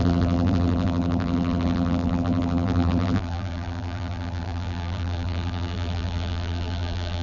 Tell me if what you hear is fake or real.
fake